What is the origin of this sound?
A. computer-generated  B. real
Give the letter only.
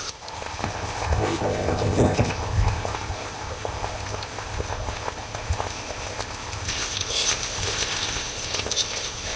A